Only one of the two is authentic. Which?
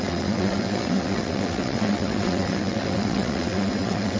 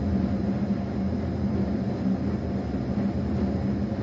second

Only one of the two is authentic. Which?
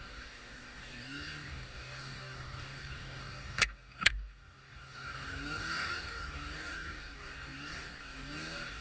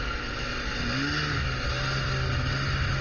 second